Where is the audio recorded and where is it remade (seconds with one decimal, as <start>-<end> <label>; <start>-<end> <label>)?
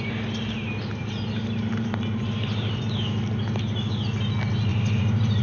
0.0-1.0 recorded; 1.0-2.8 remade; 2.8-4.7 recorded; 4.7-5.4 remade